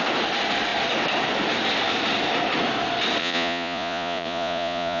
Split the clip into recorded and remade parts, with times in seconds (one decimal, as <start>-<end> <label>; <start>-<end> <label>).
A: 0.0-3.2 recorded; 3.2-5.0 remade